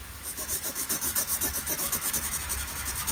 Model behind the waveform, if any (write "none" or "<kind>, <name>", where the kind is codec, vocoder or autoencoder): autoencoder, DAC-VAE